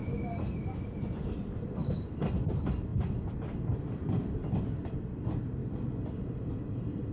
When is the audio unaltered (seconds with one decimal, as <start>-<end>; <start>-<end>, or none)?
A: 0.0-7.1